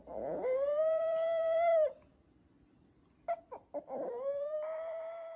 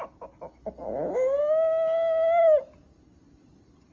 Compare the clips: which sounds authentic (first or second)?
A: second